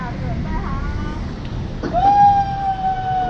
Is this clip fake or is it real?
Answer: real